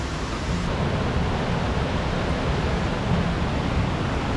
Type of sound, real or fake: real